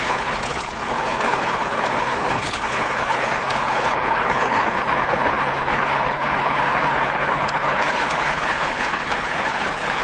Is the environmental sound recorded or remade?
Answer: remade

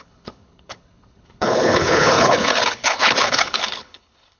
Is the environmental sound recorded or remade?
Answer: remade